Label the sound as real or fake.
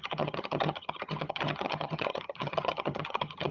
fake